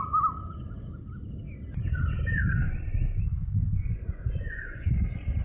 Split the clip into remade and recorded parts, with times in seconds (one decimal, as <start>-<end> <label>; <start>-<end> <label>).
0.0-2.6 recorded; 2.6-4.9 remade; 4.9-5.4 recorded

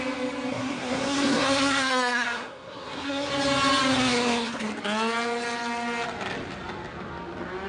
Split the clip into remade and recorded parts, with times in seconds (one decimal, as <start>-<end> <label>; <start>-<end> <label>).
0.0-0.5 recorded; 0.5-3.3 remade; 3.3-3.9 recorded; 3.9-4.7 remade; 4.7-7.7 recorded